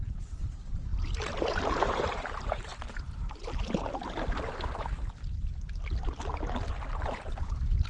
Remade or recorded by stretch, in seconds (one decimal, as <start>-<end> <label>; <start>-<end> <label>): 0.0-2.7 remade; 2.7-4.5 recorded; 4.5-5.2 remade; 5.2-7.4 recorded; 7.4-7.9 remade